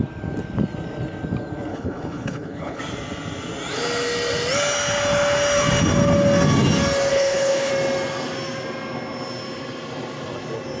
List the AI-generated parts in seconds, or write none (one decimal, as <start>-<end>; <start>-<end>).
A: 1.7-2.8; 7.1-7.7